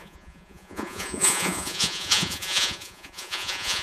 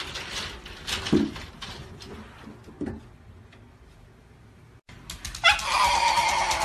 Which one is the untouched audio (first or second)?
second